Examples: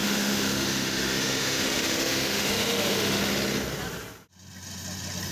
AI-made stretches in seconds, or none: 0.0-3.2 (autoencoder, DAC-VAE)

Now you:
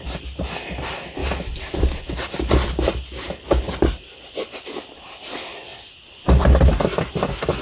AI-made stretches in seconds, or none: none

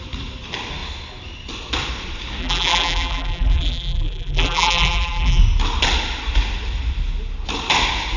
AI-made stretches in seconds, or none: 2.4-5.4 (vocoder, BigVGAN v2)